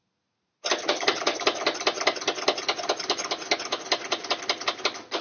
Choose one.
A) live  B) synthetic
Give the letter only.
A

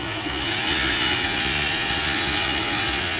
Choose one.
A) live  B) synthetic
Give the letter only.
B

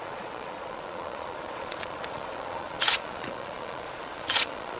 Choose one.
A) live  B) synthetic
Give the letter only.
B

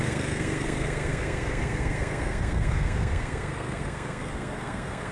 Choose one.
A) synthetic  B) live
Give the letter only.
A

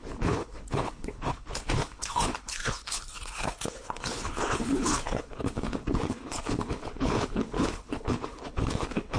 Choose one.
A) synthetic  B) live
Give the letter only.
A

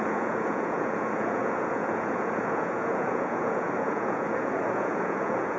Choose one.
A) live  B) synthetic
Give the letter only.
B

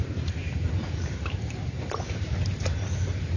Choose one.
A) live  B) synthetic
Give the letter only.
B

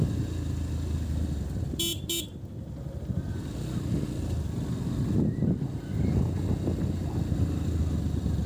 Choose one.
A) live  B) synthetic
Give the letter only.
A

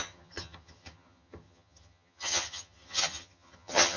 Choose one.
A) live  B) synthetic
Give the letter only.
B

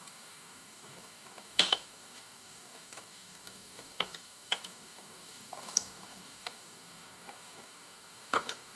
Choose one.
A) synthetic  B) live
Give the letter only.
A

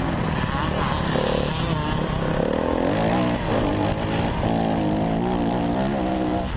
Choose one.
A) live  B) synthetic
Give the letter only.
A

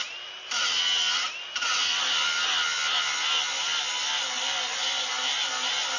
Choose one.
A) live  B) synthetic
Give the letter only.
A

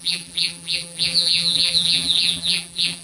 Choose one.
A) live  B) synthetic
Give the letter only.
B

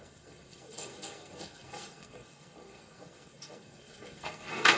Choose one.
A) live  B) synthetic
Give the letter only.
B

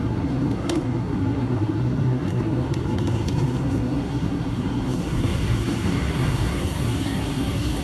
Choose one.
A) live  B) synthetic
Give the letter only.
B